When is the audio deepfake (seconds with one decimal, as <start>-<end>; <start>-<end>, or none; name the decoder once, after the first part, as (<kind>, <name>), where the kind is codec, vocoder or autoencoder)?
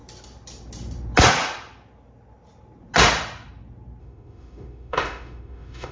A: 4.0-5.9 (autoencoder, DAC-VAE)